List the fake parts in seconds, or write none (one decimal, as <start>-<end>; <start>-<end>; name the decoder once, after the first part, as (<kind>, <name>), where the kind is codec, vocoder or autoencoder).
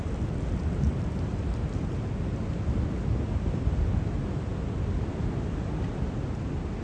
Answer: none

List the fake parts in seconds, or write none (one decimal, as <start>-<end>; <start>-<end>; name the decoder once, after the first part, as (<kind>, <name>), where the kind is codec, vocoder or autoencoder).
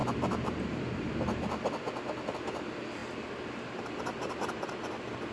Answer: none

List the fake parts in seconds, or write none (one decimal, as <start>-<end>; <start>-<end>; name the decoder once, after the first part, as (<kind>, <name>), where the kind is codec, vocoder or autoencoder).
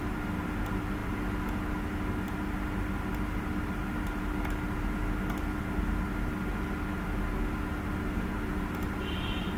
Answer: none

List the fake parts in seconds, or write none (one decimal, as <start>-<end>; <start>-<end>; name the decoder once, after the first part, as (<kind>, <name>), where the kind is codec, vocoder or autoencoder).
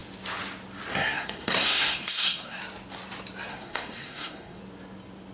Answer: 0.9-2.6 (codec, SNAC); 3.5-4.6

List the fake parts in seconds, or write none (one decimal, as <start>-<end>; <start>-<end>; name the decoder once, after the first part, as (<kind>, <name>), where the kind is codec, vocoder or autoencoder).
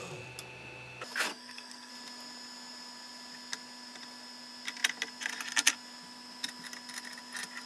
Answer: 1.3-1.9 (codec, SNAC)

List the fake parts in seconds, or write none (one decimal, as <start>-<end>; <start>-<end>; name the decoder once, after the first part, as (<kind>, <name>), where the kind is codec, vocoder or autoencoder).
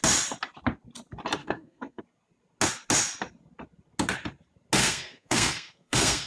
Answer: 1.4-2.0 (codec, SNAC); 4.8-6.3